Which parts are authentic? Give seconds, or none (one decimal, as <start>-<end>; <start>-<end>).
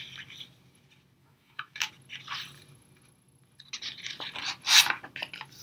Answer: 0.0-1.2; 1.9-5.6